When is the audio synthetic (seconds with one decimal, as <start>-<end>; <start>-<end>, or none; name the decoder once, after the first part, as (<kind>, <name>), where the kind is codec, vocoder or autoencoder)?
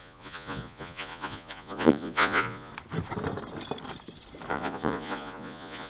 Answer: 0.0-2.7 (vocoder, Vocos); 4.5-5.9